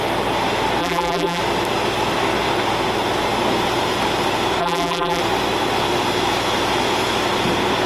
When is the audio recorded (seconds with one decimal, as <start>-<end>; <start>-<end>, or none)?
0.0-0.8; 1.4-4.6; 5.2-7.9